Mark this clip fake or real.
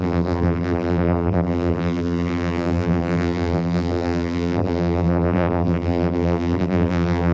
fake